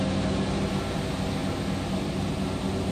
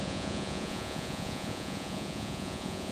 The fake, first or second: second